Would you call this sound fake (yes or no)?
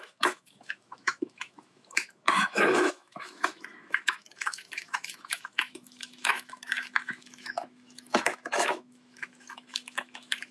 yes